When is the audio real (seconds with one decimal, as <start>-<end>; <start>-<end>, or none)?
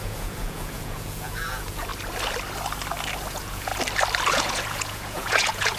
1.9-3.3; 3.7-4.3